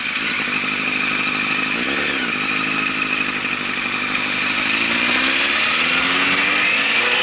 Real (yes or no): yes